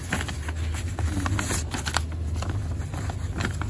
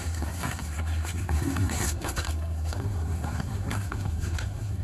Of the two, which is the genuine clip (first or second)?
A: first